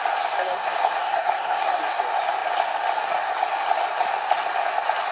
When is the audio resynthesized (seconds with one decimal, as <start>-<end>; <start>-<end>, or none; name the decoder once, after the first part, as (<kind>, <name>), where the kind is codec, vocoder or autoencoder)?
1.0-1.8 (codec, SNAC)